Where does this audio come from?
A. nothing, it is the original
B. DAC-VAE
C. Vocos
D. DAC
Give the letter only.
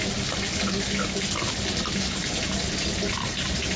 A